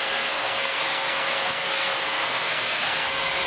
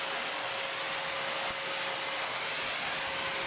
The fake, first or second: first